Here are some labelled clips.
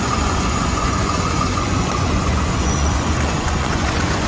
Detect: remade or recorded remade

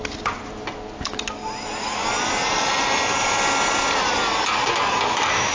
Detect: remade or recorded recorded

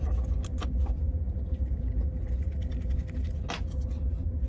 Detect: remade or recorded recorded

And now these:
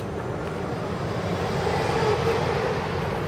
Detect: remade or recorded recorded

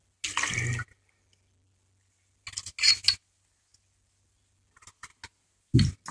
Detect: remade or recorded recorded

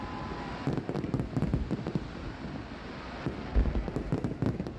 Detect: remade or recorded recorded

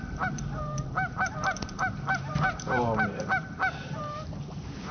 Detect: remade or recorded remade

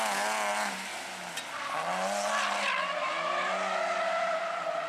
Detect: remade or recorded recorded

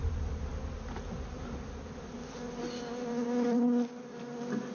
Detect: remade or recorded recorded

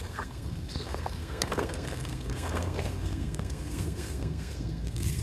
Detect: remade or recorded remade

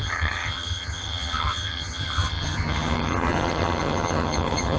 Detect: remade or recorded remade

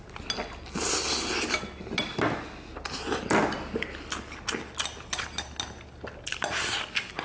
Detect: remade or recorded recorded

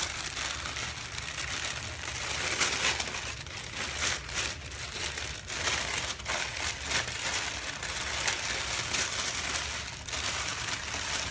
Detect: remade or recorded recorded